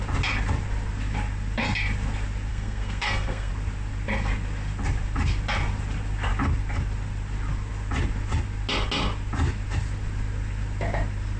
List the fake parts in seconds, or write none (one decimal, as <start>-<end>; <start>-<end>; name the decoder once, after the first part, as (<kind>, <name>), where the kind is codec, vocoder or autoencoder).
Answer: 2.5-3.5 (codec, SNAC)